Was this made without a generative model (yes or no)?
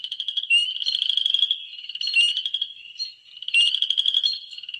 yes